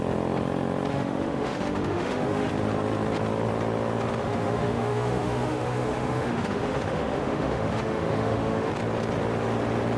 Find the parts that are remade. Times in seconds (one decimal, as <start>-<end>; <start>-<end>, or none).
0.9-2.5; 4.2-8.7